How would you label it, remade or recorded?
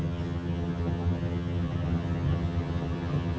remade